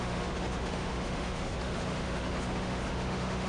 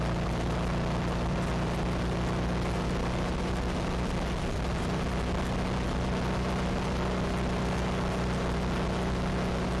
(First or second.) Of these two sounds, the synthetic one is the first